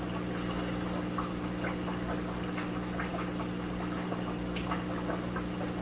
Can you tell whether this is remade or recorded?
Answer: recorded